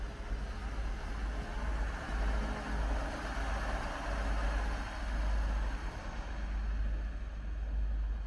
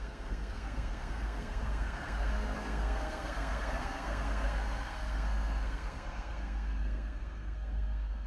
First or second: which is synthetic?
second